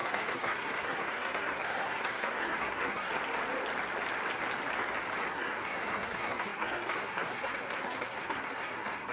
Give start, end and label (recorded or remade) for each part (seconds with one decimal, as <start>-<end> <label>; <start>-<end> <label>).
0.0-3.1 remade; 3.1-5.3 recorded; 5.3-9.1 remade